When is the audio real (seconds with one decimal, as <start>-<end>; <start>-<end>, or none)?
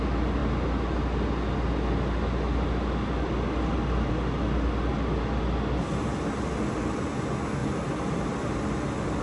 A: 0.0-9.2